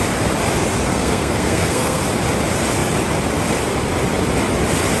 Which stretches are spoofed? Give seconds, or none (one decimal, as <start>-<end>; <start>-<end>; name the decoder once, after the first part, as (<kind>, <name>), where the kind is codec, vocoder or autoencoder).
0.9-2.0 (codec, SNAC)